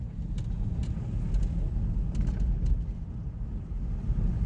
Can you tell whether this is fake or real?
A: real